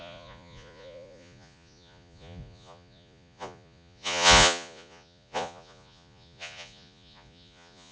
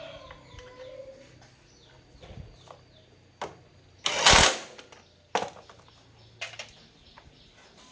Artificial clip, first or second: first